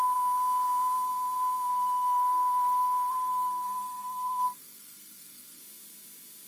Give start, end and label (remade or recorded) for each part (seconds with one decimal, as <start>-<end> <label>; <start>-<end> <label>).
0.0-1.7 recorded; 1.7-5.6 remade; 5.6-6.5 recorded